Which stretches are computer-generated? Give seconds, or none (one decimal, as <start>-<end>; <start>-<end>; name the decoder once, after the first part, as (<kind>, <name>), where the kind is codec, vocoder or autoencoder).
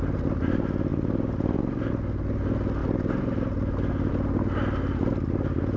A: 0.9-1.9 (vocoder, BigVGAN v2); 2.8-4.1